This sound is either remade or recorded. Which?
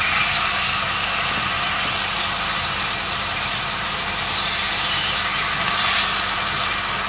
recorded